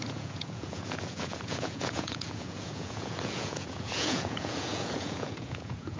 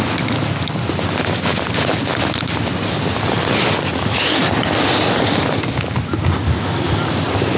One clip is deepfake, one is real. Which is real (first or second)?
second